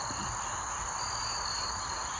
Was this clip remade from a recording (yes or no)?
no